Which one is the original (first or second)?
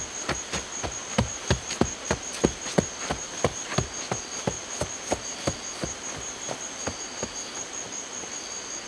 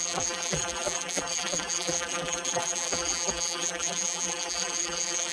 first